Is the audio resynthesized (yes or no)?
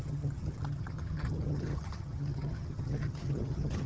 yes